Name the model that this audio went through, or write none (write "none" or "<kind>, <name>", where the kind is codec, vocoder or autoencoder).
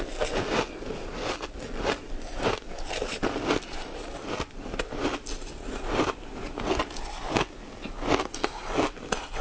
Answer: none